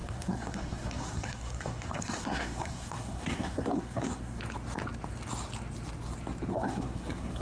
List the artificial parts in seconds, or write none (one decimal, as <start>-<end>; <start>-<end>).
0.0-4.4; 6.5-7.4